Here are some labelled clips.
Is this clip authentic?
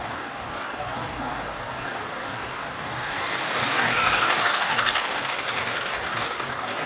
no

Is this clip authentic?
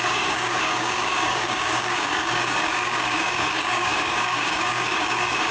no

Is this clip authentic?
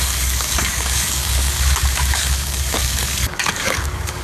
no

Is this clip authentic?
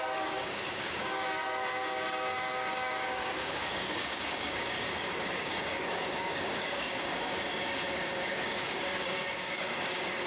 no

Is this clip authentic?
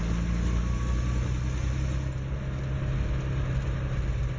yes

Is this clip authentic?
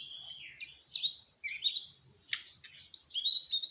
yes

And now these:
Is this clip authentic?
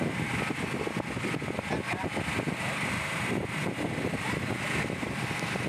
yes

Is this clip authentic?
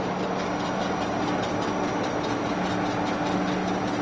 yes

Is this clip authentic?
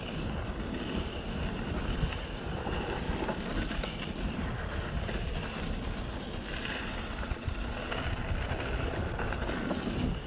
yes